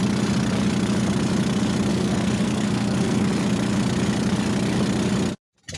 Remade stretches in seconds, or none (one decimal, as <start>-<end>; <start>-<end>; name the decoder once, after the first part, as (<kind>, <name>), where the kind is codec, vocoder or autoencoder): 1.9-3.3 (codec, SNAC)